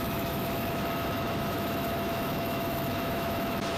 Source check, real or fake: fake